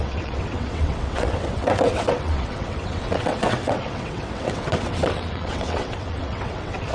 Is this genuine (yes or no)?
no